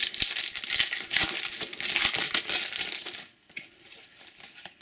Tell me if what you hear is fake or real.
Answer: real